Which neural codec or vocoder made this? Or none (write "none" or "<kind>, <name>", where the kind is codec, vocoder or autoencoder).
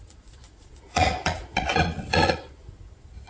vocoder, Vocos